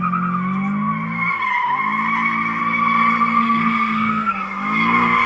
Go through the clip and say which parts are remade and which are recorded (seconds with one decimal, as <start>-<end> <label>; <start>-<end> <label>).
0.0-3.4 recorded; 3.4-4.3 remade; 4.3-5.3 recorded